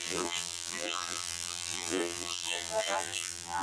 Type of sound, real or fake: fake